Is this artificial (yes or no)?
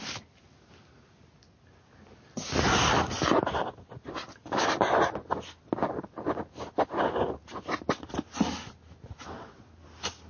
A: no